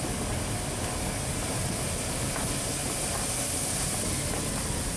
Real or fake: real